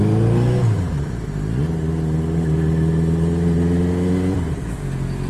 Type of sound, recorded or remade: recorded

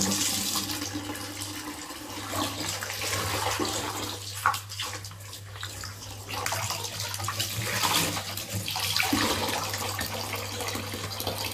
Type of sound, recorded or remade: recorded